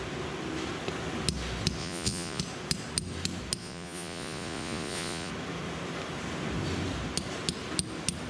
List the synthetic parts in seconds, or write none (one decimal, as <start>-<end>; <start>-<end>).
1.8-2.4; 3.6-5.3